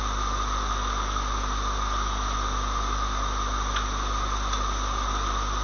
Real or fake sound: real